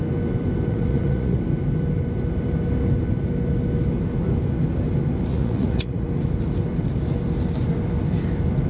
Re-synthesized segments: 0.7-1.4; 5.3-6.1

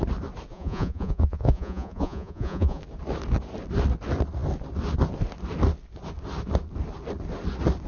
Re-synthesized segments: 0.5-2.8